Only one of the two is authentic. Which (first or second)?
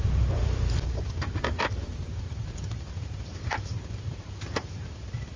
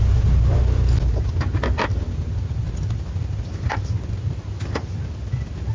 second